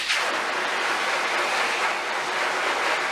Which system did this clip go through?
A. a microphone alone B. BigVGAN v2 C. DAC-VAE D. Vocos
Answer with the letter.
B